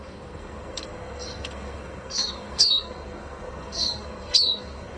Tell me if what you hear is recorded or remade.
remade